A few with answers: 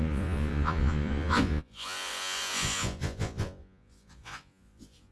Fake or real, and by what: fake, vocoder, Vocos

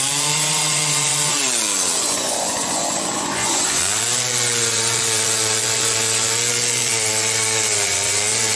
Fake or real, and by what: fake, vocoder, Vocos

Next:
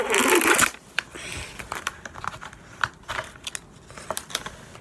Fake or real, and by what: real